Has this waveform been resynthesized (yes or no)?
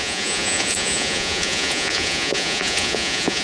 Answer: yes